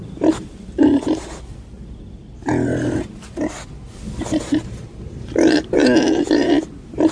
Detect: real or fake real